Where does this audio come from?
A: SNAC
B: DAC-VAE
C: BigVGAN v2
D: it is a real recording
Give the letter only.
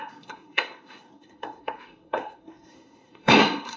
A